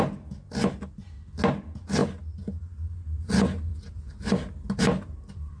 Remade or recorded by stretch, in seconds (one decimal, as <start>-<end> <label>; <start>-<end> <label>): 0.0-5.6 recorded